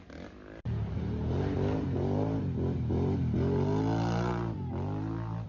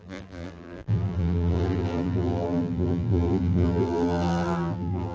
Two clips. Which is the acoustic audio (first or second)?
first